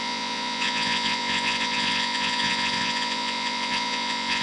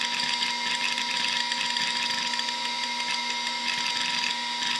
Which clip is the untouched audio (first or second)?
second